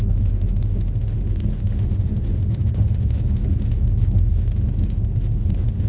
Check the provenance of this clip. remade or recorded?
remade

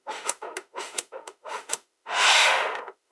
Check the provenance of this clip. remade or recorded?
remade